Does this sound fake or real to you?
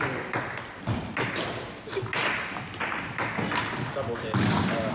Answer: real